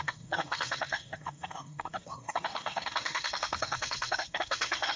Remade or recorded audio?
remade